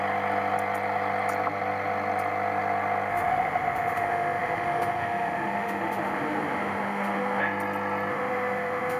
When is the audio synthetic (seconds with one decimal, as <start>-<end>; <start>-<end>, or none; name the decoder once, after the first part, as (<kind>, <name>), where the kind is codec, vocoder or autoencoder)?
3.1-7.4 (autoencoder, DAC-VAE); 8.1-9.0